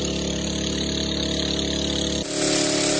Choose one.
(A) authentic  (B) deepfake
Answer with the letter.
A